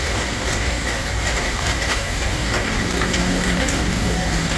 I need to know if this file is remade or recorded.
remade